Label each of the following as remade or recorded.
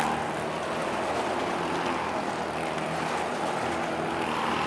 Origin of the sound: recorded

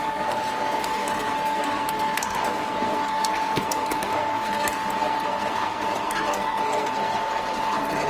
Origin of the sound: remade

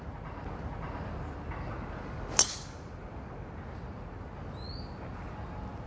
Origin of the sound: recorded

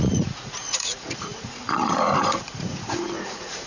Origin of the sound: remade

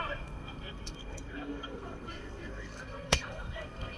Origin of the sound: remade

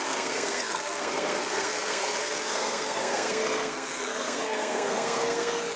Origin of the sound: remade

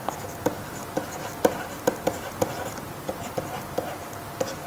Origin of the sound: recorded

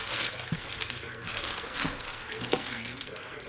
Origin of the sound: remade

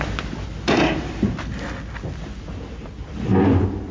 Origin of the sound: recorded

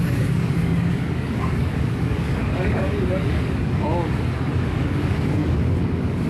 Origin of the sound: remade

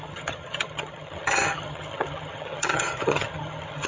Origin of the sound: remade